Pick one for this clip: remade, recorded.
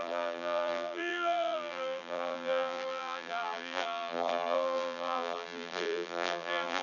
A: remade